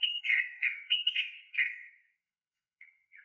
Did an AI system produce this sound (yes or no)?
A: yes